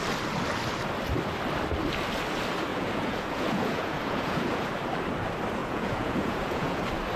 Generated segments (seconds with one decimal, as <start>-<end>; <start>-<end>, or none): 2.7-4.7; 5.6-6.8

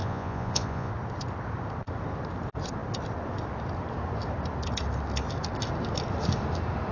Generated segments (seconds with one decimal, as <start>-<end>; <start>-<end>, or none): 0.0-0.9

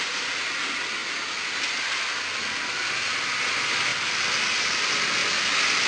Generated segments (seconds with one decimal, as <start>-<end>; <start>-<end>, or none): none

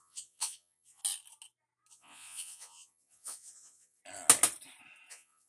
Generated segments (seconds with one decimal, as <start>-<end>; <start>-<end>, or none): 0.0-1.0; 1.9-4.0; 5.1-5.5